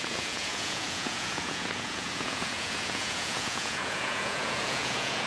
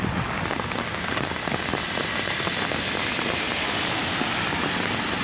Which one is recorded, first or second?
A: second